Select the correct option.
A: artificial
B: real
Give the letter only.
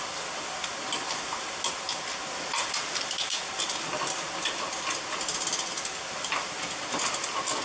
B